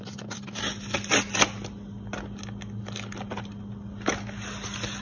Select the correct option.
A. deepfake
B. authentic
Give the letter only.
B